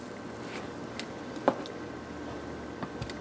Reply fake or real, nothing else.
real